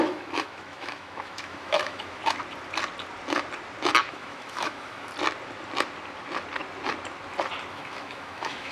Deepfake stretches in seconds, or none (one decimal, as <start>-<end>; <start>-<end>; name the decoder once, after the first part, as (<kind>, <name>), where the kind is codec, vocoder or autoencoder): 0.0-2.2 (autoencoder, DAC-VAE); 4.1-5.1; 7.7-8.7